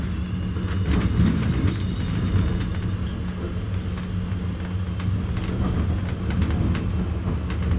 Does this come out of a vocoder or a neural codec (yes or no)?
no